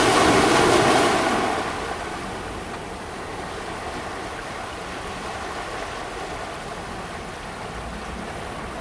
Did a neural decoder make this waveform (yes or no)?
no